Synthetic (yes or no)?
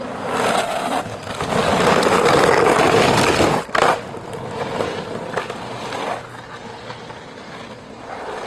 no